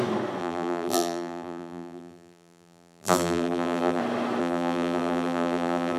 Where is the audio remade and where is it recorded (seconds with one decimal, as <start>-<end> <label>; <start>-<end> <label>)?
0.0-0.4 recorded; 0.4-4.0 remade; 4.0-4.4 recorded; 4.4-6.0 remade